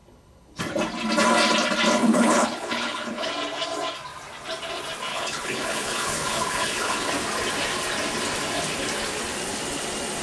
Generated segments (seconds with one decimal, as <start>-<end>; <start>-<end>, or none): 0.0-0.6; 2.0-3.3; 5.1-7.1